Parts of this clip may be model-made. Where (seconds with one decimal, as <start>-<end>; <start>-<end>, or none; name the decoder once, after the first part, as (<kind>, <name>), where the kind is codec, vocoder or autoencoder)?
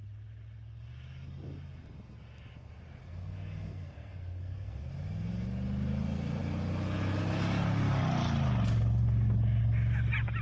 3.0-4.9 (codec, SNAC)